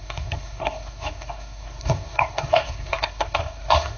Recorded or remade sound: remade